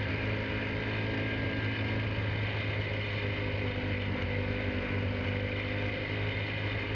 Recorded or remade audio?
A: recorded